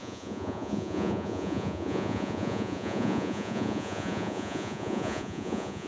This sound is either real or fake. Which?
fake